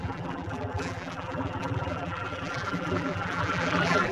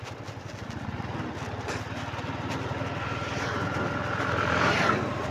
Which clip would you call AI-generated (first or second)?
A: first